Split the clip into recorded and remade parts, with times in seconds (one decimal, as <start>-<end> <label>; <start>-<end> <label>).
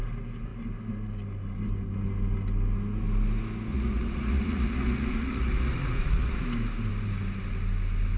0.0-3.7 recorded; 3.7-6.4 remade; 6.4-8.2 recorded